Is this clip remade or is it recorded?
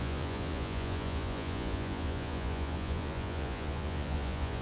remade